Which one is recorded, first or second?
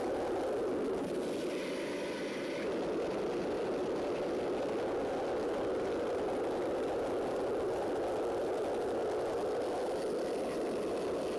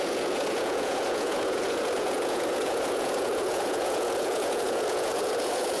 first